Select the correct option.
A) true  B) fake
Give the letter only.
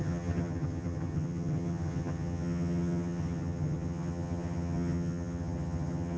B